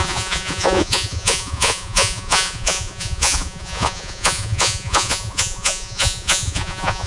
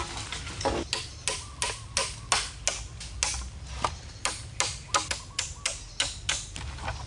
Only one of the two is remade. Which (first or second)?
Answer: first